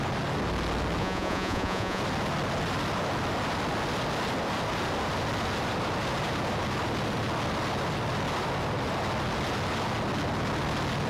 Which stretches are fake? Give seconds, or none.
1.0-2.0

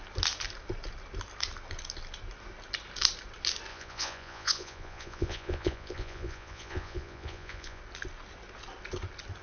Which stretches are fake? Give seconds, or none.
3.7-7.8

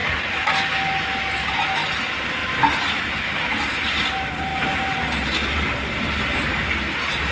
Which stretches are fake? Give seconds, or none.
0.0-0.5

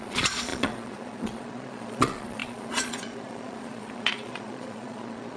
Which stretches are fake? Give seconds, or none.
0.0-5.4

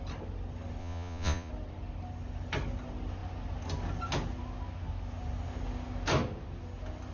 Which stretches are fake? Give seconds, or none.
0.8-1.5

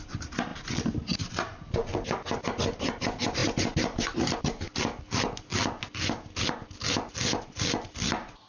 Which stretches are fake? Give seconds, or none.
none

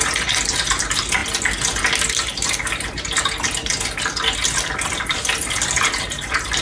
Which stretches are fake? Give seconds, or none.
none